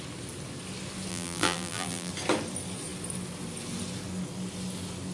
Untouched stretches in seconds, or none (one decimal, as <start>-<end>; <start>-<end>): 0.0-1.1; 2.1-5.1